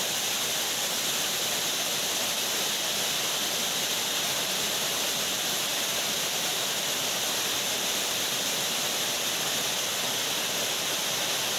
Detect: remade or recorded recorded